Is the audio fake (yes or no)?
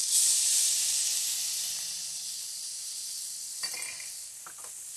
no